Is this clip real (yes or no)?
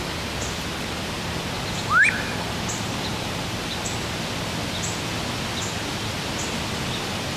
yes